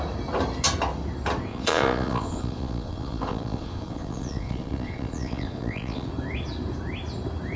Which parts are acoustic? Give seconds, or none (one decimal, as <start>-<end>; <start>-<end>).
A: 0.0-1.5; 6.1-7.6